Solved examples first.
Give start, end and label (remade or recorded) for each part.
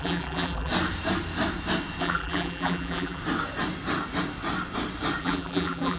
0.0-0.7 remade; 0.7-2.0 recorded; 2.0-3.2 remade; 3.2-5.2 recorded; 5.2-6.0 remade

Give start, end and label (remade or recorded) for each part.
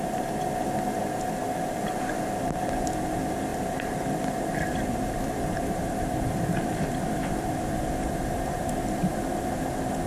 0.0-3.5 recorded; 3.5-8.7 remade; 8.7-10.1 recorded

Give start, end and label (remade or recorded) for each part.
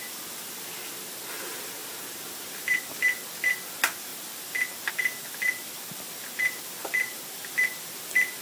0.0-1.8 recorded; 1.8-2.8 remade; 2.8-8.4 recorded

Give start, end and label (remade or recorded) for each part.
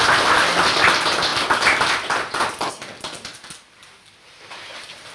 0.0-5.1 recorded